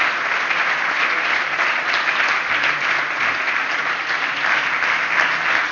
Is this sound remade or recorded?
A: recorded